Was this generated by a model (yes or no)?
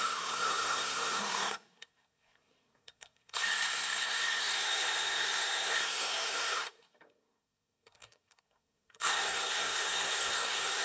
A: yes